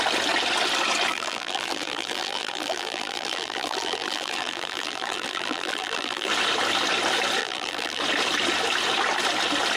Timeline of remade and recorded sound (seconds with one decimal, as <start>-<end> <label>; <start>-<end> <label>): 0.0-1.1 recorded; 1.1-6.3 remade; 6.3-7.4 recorded; 7.4-8.0 remade; 8.0-9.8 recorded